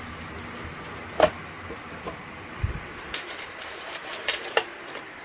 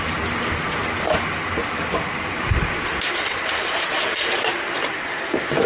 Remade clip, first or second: second